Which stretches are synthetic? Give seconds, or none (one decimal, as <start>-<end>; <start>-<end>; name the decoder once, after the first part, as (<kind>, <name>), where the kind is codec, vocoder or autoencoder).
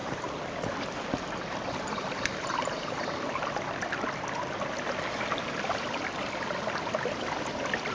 none